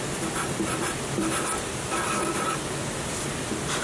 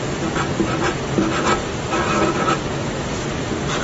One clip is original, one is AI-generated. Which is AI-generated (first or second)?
first